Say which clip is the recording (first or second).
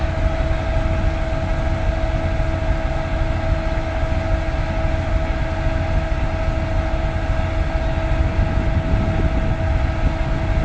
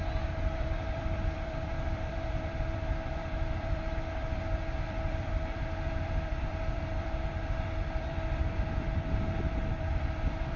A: first